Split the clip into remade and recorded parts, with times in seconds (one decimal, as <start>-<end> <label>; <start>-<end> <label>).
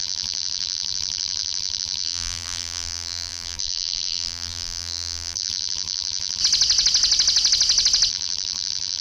0.0-6.4 remade; 6.4-8.1 recorded; 8.1-9.0 remade